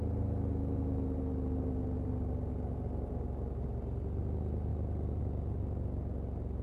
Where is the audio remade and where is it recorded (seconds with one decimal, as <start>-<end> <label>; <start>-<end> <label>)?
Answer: 0.0-6.6 recorded